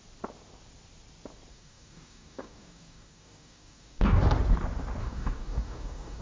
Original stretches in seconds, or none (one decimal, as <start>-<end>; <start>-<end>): 0.0-1.5; 4.2-5.0